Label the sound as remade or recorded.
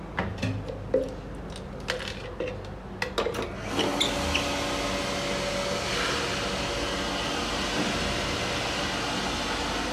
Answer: recorded